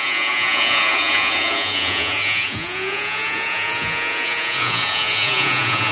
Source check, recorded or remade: remade